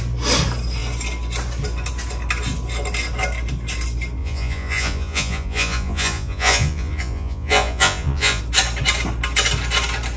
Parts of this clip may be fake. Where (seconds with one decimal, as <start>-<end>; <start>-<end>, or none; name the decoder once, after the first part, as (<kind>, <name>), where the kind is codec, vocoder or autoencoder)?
4.2-8.4 (vocoder, Vocos)